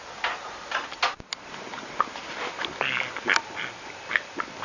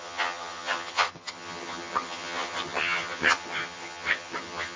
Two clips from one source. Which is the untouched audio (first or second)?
first